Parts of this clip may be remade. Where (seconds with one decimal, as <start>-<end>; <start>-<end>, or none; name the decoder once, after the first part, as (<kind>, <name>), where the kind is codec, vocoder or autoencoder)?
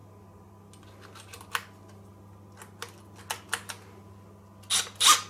none